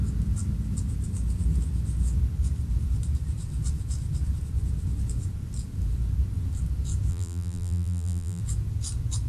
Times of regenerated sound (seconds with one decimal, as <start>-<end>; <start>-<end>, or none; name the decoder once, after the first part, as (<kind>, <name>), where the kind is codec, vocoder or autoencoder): 7.1-8.4 (vocoder, BigVGAN v2)